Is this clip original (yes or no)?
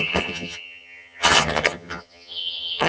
no